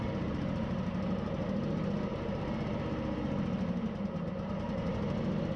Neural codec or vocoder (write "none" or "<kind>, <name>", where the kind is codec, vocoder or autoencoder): none